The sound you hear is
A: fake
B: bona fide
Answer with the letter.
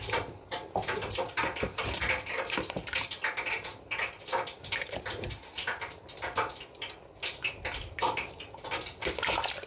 B